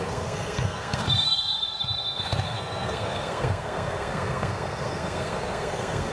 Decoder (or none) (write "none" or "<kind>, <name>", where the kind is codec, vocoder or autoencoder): codec, SNAC